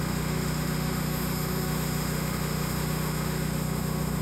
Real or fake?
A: fake